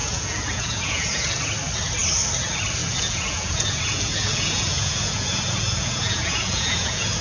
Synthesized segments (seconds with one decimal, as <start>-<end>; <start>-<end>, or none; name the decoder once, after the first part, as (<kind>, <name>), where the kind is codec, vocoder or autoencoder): 0.0-1.4 (vocoder, Vocos); 2.8-7.2